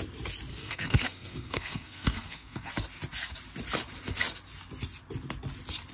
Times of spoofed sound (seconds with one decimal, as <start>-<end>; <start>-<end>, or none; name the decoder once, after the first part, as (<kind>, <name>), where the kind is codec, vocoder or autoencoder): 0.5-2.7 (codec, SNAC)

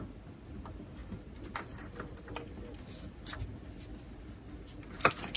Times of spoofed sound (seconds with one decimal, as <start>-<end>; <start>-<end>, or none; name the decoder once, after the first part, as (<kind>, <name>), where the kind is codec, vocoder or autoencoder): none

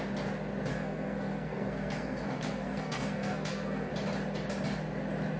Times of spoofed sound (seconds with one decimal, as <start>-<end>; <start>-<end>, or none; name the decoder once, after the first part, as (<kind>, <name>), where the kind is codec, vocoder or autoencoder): 0.7-3.9 (codec, SNAC)

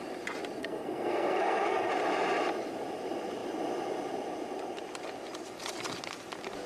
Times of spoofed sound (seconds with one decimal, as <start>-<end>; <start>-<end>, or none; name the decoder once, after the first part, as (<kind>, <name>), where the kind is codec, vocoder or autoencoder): 0.6-1.9 (codec, SNAC)

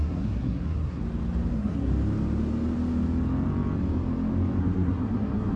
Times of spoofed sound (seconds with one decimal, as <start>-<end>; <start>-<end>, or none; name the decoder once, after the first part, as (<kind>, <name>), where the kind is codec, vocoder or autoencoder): 0.0-1.0 (codec, SNAC); 1.5-1.9; 4.6-5.6